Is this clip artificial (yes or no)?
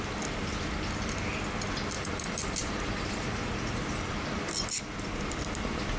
no